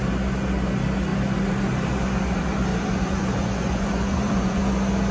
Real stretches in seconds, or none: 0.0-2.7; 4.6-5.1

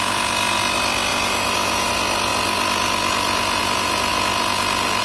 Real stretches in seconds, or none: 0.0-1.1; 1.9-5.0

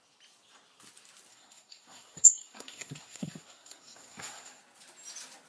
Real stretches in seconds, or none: 0.0-1.3; 4.6-5.5

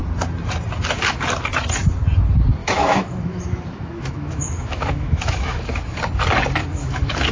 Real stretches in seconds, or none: 0.0-2.6; 6.0-6.6

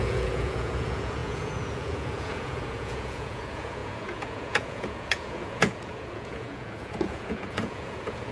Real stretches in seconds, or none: none

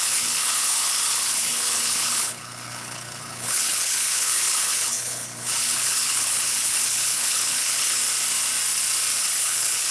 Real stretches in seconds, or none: 8.0-9.2